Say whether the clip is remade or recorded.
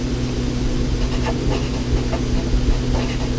recorded